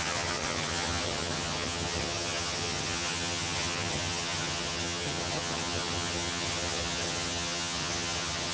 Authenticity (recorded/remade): remade